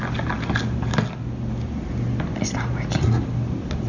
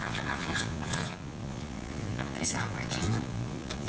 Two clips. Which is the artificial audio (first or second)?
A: second